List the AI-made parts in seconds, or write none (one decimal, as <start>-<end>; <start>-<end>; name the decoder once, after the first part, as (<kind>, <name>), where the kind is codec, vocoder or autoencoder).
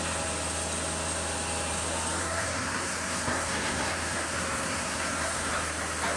2.2-5.5 (codec, SNAC)